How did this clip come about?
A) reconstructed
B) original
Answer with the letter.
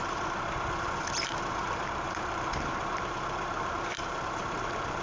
A